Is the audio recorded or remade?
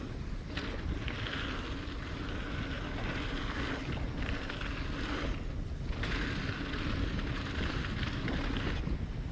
recorded